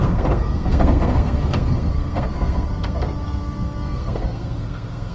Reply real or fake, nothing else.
fake